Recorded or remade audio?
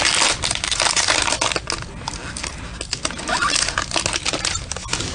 recorded